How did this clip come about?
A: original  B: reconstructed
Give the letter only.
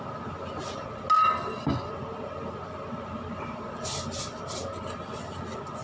A